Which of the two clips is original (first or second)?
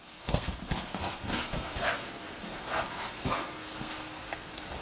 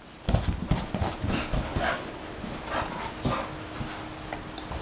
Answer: second